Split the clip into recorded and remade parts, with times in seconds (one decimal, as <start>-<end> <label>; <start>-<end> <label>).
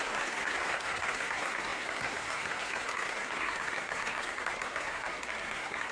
0.0-5.9 remade